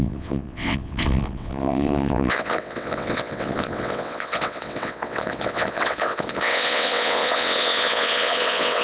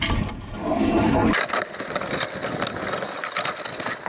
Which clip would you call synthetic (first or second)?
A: first